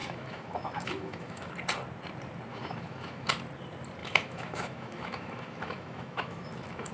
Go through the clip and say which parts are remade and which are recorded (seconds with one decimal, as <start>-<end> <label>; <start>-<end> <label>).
0.0-1.5 remade; 1.5-2.5 recorded; 2.5-3.3 remade; 3.3-4.0 recorded; 4.0-6.9 remade